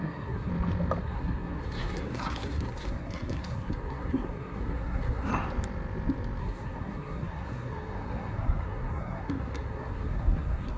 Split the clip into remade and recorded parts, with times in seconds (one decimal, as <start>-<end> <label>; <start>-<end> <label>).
0.0-0.5 remade; 0.5-1.0 recorded; 1.0-5.3 remade; 5.3-6.4 recorded; 6.4-10.8 remade